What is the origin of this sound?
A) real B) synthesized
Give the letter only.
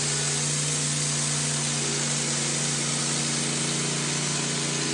A